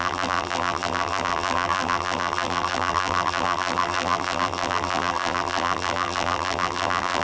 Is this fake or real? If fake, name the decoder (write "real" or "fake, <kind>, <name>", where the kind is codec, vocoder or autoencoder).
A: fake, vocoder, BigVGAN v2